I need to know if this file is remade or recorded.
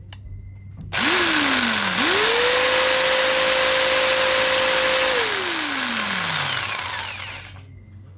recorded